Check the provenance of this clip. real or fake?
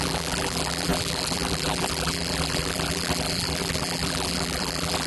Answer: fake